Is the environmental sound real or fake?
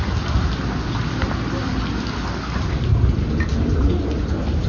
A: real